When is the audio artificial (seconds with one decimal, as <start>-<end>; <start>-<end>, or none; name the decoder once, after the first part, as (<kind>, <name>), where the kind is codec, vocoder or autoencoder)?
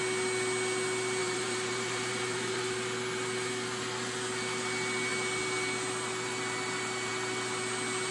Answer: 1.2-2.7 (vocoder, BigVGAN v2)